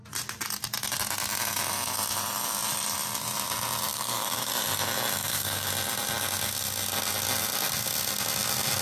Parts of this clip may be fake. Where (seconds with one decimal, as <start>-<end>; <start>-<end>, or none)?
3.9-4.5; 5.2-5.7